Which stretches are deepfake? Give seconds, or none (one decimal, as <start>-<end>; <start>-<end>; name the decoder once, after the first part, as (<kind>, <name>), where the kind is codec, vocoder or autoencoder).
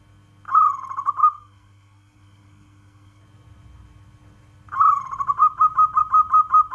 1.2-3.2 (codec, SNAC)